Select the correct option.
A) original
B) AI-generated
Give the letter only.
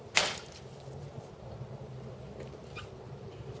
A